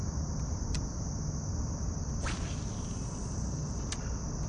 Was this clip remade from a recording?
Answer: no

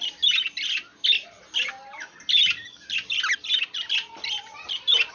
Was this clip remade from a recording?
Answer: no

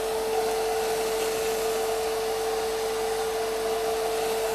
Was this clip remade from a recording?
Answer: no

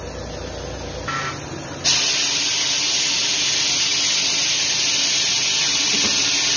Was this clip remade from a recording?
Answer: no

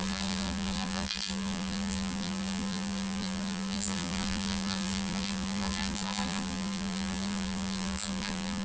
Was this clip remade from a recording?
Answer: yes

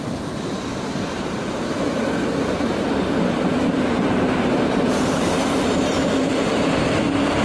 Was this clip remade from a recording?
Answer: yes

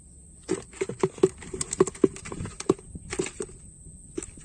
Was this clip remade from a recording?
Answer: no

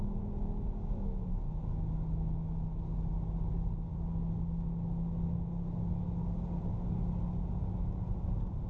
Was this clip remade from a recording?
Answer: no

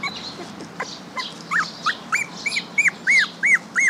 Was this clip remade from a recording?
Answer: no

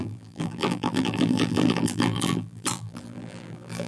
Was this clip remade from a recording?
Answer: yes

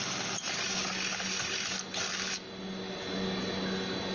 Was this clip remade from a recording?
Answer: no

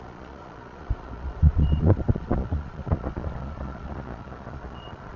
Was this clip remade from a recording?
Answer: yes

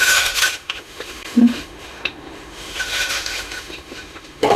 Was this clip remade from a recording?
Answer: yes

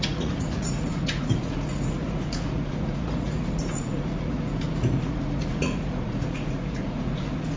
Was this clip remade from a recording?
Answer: yes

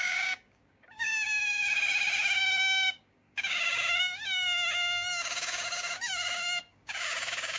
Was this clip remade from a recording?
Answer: yes